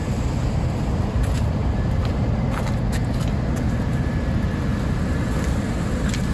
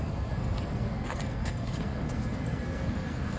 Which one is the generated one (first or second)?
second